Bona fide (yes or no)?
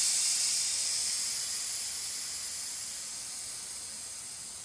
yes